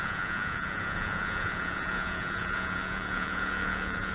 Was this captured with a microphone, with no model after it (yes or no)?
no